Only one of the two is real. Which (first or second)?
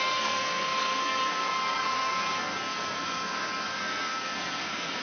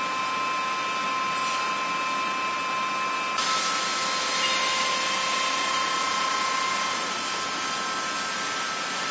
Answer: second